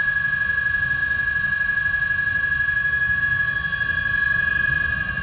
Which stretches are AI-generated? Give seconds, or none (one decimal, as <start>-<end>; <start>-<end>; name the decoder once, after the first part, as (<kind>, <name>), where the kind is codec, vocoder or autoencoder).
none